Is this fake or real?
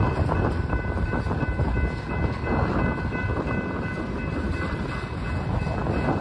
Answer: real